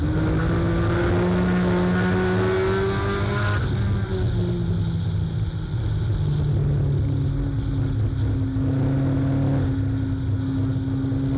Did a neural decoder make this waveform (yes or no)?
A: no